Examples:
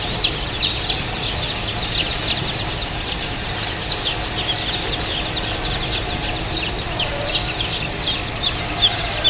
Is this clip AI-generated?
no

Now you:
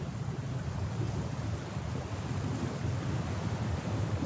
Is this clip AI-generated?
no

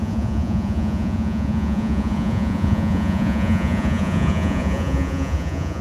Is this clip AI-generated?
yes